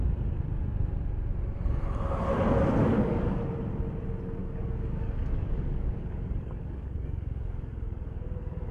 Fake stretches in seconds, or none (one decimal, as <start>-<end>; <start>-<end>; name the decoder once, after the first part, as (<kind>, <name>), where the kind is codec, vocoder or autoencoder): 2.8-3.4 (codec, DAC); 4.4-8.7